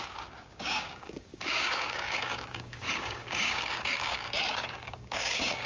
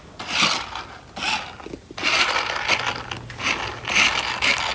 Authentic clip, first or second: second